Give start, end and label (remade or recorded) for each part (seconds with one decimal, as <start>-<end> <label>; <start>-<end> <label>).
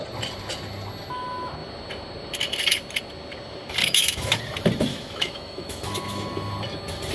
0.0-3.8 recorded; 3.8-4.4 remade; 4.4-4.9 recorded; 4.9-6.5 remade; 6.5-7.1 recorded